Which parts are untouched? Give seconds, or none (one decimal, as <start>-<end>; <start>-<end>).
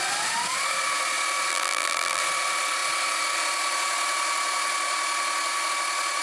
0.0-1.5; 2.2-6.2